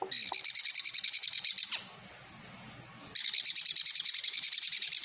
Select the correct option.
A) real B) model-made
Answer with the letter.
A